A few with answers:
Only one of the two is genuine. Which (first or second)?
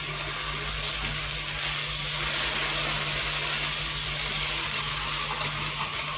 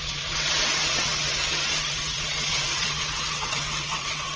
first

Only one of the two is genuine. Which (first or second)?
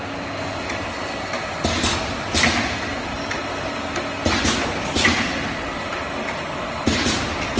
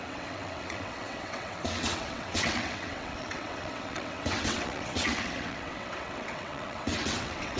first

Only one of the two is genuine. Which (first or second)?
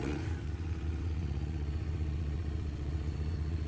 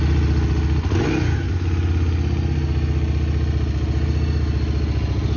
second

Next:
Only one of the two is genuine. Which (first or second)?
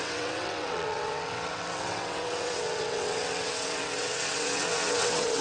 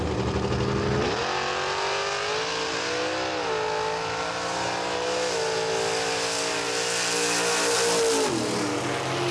second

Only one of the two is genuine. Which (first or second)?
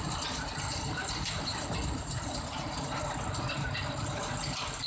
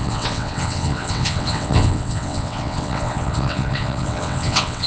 first